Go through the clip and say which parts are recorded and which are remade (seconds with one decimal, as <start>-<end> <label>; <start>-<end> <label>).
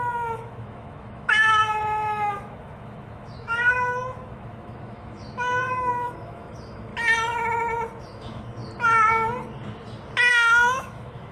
0.0-6.9 remade; 6.9-8.0 recorded; 8.0-8.6 remade; 8.6-10.3 recorded; 10.3-11.3 remade